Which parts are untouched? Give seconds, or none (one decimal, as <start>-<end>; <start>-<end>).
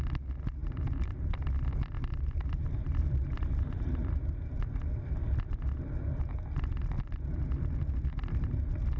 0.0-0.6; 1.5-2.0; 3.9-9.0